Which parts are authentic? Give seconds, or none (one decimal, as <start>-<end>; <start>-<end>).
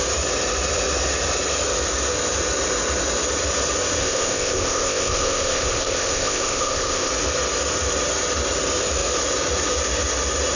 0.0-4.0; 7.1-10.6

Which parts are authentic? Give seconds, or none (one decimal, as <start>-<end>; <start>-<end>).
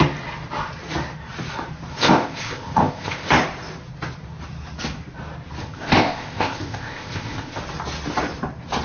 0.0-1.9; 3.3-5.6; 7.6-8.8